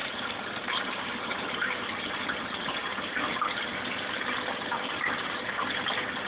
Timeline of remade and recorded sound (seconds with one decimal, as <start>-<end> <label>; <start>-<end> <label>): 0.0-3.2 remade; 3.2-6.3 recorded